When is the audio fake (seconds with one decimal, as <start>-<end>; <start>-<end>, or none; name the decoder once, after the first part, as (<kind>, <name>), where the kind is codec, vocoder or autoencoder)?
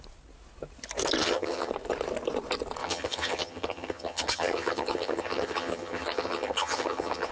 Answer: 1.2-1.7 (vocoder, HiFi-GAN); 2.8-7.3